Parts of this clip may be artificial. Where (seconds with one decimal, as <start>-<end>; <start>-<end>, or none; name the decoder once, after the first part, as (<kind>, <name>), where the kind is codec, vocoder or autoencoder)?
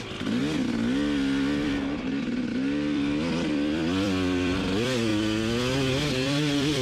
0.0-0.4 (vocoder, BigVGAN v2); 2.4-5.1; 6.1-6.8